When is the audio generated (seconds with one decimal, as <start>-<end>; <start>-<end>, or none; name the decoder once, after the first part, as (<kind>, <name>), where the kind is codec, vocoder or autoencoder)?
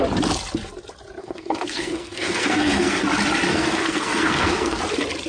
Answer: 1.2-3.0 (codec, SNAC); 3.5-4.8